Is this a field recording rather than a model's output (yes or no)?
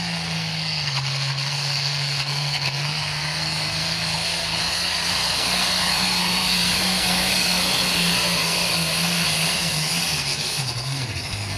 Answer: no